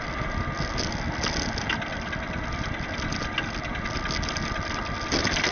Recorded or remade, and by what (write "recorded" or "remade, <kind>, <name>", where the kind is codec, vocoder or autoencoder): recorded